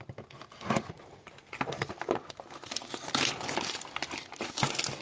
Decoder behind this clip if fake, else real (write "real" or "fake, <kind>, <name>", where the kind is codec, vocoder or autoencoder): real